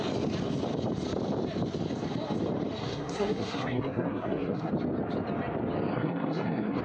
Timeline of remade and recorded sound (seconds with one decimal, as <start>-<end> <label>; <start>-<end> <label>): 0.0-2.8 recorded; 2.8-4.7 remade; 4.7-5.9 recorded; 5.9-6.8 remade